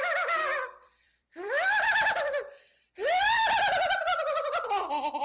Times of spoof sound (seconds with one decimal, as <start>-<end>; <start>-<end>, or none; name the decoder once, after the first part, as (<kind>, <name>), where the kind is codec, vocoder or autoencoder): 0.5-3.6 (vocoder, BigVGAN v2)